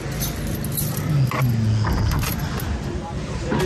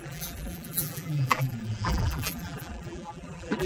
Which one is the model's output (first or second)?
second